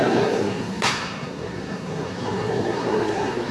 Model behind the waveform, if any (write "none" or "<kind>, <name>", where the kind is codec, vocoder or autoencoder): codec, SNAC